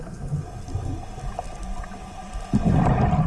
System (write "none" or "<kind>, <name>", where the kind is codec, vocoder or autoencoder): none